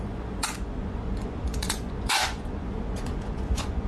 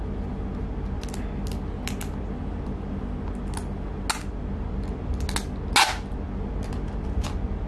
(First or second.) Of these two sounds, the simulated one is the first